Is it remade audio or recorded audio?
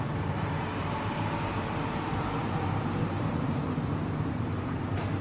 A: remade